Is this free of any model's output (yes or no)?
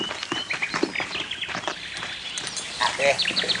yes